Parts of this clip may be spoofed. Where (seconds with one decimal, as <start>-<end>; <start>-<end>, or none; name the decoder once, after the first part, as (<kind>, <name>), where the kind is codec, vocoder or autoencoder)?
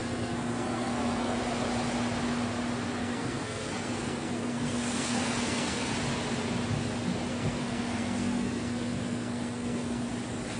0.0-1.4 (codec, SNAC); 3.0-5.9; 7.3-10.1